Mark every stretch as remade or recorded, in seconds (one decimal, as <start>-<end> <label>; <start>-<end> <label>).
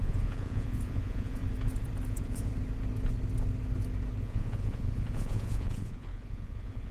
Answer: 0.0-1.4 remade; 1.4-2.1 recorded; 2.1-2.5 remade; 2.5-4.2 recorded; 4.2-6.9 remade